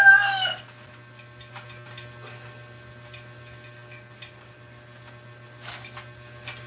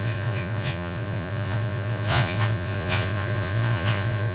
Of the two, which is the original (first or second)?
first